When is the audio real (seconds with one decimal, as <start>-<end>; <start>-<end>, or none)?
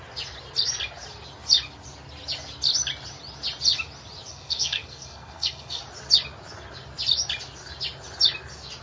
0.0-4.3; 5.8-8.8